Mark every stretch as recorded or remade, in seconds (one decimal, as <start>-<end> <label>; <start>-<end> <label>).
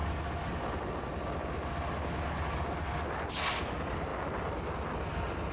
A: 0.0-5.5 recorded